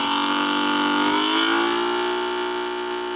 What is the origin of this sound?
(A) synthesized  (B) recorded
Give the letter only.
B